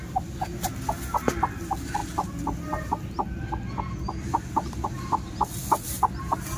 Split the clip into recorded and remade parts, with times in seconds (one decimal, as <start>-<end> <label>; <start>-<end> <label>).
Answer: 0.0-2.0 recorded; 2.0-2.9 remade; 2.9-6.6 recorded